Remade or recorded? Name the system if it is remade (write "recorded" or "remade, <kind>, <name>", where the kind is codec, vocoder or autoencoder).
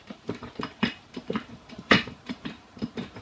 remade, vocoder, BigVGAN v2